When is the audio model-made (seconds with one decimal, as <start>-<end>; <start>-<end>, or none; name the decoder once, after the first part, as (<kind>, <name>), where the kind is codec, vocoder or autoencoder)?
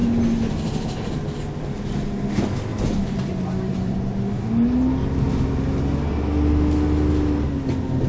2.7-5.5 (vocoder, BigVGAN v2)